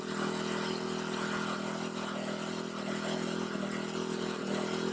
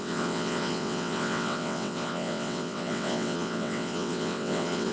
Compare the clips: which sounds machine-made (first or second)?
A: second